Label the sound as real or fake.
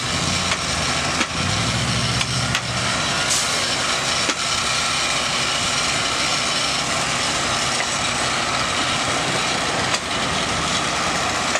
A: real